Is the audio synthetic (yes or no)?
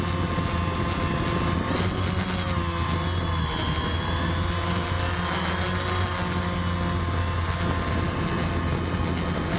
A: no